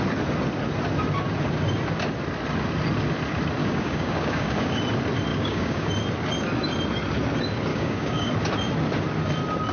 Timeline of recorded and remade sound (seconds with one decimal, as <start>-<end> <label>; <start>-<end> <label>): 0.0-3.6 recorded; 3.6-4.8 remade; 4.8-5.3 recorded; 5.3-5.9 remade; 5.9-7.7 recorded; 7.7-8.3 remade; 8.3-9.7 recorded